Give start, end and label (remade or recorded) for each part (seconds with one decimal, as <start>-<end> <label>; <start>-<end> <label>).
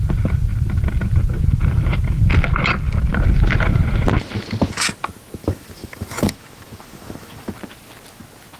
0.0-5.4 recorded; 5.4-7.5 remade; 7.5-8.6 recorded